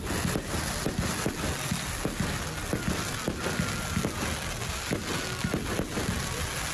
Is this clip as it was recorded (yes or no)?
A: yes